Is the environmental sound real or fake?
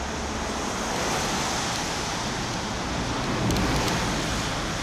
real